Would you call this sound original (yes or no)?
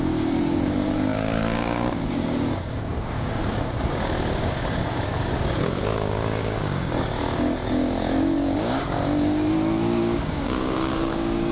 no